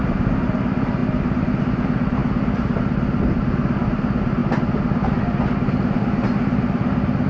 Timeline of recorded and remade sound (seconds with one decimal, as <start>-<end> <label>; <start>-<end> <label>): 0.0-7.3 recorded